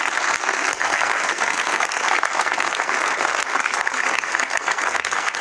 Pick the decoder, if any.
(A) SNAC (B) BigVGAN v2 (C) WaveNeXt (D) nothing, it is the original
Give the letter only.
A